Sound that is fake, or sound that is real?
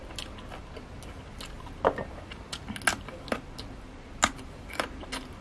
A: real